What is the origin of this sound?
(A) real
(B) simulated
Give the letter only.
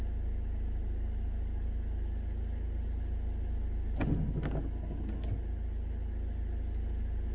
A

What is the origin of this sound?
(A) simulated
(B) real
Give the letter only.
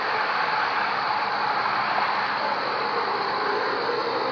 B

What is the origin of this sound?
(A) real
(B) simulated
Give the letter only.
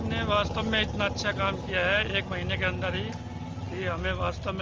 A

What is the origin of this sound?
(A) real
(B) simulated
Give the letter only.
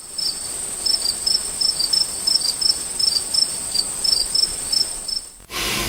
A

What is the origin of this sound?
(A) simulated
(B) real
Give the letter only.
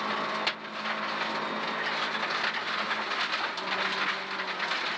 B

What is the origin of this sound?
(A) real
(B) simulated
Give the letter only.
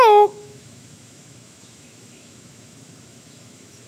B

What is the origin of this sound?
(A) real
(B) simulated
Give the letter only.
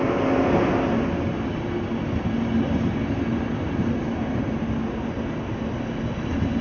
A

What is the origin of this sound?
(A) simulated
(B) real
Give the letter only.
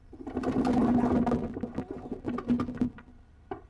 B